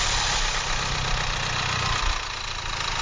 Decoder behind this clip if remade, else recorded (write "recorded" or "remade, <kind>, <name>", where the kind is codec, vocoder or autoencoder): recorded